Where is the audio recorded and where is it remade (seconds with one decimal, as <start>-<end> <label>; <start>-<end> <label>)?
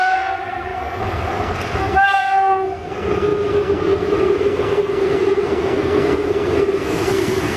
0.0-7.6 remade